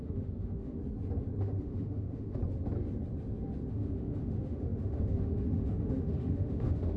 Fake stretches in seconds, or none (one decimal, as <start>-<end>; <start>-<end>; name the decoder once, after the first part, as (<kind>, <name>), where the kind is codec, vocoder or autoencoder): 0.0-0.8 (autoencoder, DAC-VAE); 1.4-2.4; 3.7-7.0